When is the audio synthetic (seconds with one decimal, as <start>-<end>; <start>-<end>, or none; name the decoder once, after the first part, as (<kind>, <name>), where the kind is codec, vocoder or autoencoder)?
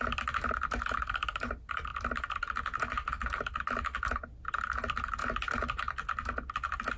none